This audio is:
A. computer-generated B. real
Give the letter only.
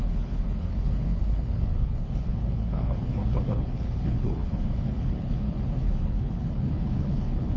A